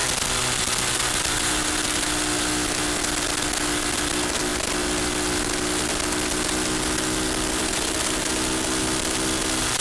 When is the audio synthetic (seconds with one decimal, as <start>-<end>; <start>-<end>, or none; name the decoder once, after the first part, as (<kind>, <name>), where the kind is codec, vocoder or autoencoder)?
none